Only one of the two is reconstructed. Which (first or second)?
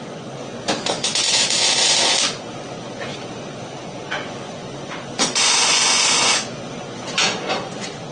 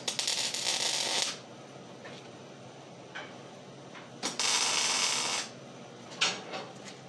first